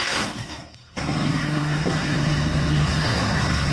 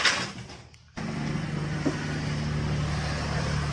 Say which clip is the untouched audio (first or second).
second